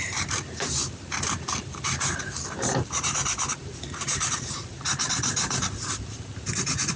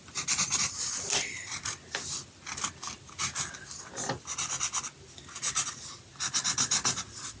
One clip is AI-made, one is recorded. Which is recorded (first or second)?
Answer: second